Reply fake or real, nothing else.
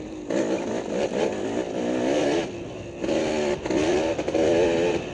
real